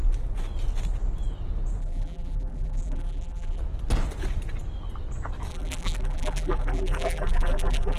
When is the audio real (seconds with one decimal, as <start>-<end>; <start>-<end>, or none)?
0.0-1.8; 3.6-5.5